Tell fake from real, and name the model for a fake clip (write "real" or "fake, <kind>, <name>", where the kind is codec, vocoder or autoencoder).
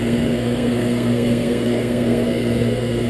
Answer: fake, codec, SNAC